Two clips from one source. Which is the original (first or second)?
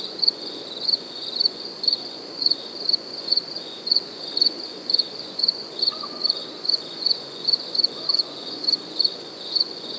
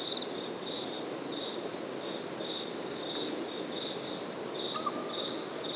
second